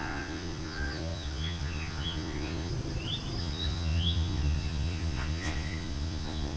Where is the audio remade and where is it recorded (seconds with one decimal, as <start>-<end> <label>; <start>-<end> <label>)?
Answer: 0.0-2.7 remade; 2.7-3.4 recorded; 3.4-6.6 remade